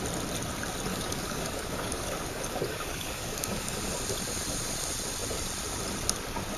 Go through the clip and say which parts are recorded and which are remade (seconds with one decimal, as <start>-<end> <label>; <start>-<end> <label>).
0.0-0.9 recorded; 0.9-3.8 remade; 3.8-6.6 recorded